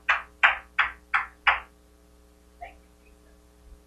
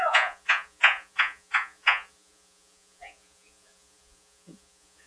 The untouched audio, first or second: first